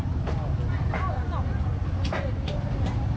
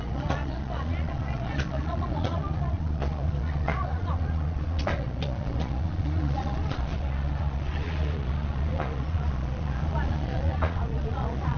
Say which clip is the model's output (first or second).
second